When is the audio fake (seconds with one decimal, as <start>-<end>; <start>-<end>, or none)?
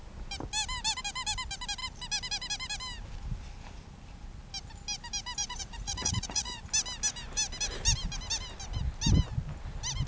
5.4-6.6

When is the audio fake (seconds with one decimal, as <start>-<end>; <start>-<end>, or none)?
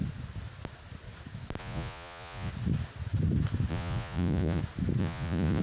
1.6-2.5; 3.7-4.6; 5.0-5.6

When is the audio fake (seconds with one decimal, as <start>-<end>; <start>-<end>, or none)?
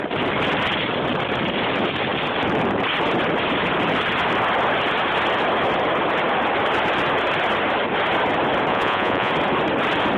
8.7-9.3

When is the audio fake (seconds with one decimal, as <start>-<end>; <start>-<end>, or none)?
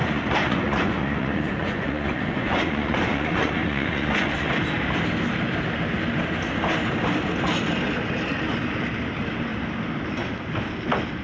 0.0-4.5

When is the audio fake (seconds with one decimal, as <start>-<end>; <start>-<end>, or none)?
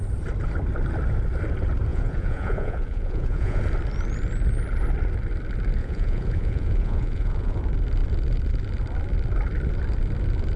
1.9-3.6; 5.8-7.6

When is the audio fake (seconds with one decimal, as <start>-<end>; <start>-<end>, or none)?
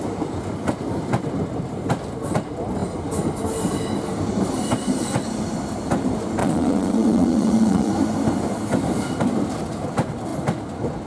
6.4-7.9